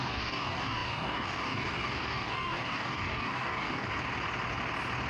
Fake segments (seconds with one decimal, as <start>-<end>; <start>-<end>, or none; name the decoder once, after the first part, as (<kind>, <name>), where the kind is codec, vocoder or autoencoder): 0.0-3.9 (codec, DAC)